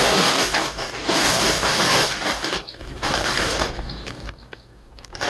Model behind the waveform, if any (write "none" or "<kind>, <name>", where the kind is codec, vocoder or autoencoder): codec, DAC